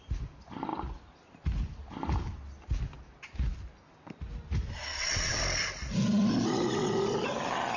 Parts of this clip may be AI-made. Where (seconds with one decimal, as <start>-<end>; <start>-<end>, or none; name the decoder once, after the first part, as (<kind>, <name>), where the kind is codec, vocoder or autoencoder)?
4.9-5.4 (vocoder, WaveNeXt)